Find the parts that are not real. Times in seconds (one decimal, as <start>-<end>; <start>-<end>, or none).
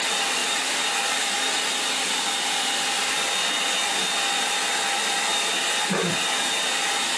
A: none